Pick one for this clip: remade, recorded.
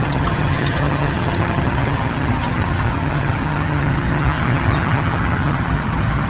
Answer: remade